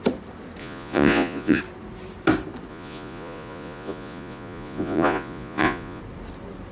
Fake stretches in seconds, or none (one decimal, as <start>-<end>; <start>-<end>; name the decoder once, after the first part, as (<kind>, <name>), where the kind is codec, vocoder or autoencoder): 0.6-1.6 (vocoder, Vocos); 2.7-6.0